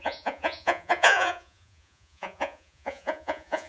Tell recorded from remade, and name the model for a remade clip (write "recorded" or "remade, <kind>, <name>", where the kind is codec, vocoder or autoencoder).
remade, vocoder, Vocos